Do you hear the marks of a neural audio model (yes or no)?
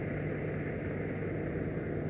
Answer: no